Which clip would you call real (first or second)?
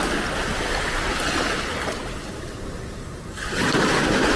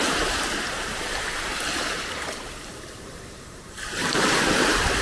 first